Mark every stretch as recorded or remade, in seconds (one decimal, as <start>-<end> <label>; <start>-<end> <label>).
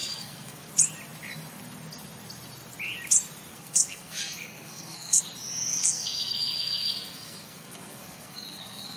0.0-0.7 remade; 0.7-3.5 recorded; 3.5-5.2 remade; 5.2-5.7 recorded; 5.7-9.0 remade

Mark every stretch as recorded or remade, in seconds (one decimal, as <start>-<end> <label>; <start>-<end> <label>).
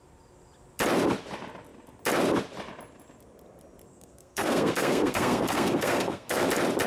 0.0-3.9 recorded; 3.9-6.5 remade; 6.5-6.9 recorded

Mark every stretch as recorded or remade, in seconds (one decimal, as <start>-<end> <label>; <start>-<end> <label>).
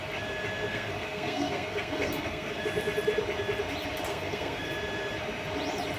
0.0-0.7 recorded; 0.7-2.6 remade; 2.6-4.1 recorded; 4.1-4.7 remade; 4.7-6.0 recorded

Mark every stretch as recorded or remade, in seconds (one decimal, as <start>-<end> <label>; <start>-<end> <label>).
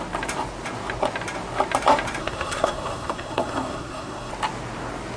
0.0-2.2 recorded; 2.2-4.3 remade; 4.3-5.2 recorded